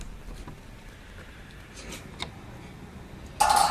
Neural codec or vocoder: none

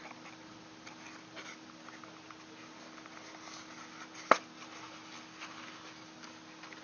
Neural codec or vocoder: none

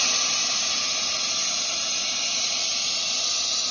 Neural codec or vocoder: none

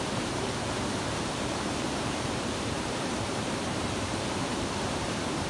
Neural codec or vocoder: vocoder, BigVGAN v2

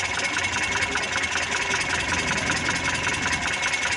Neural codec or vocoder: none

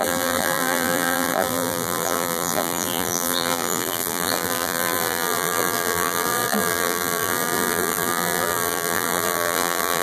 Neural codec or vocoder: vocoder, BigVGAN v2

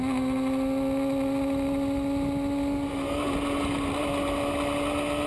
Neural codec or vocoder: none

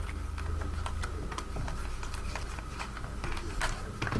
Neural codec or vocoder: none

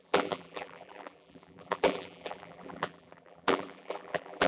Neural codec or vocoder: vocoder, BigVGAN v2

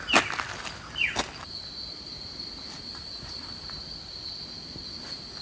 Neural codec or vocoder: none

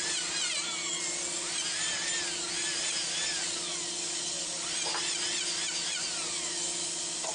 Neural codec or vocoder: none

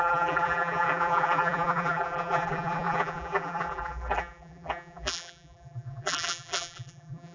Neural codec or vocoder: vocoder, BigVGAN v2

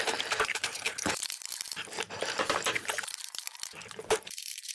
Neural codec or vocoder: vocoder, BigVGAN v2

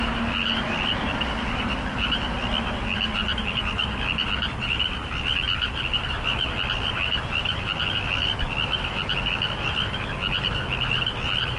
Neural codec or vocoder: none